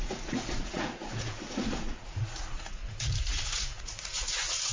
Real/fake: fake